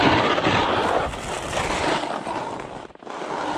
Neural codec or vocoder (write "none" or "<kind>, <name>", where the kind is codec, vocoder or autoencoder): none